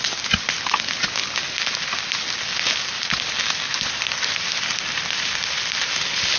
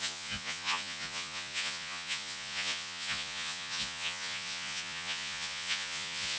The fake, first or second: second